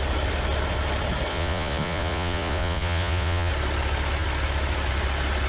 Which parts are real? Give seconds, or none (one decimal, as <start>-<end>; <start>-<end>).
0.0-1.3; 3.5-5.5